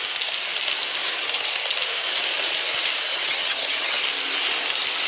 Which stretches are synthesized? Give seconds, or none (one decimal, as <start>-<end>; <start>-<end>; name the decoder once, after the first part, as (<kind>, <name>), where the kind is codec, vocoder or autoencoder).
3.1-4.0 (vocoder, HiFi-GAN)